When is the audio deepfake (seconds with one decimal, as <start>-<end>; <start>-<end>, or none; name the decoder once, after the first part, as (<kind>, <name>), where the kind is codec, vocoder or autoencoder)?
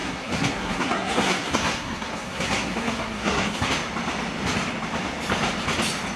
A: 0.0-3.7 (codec, SNAC)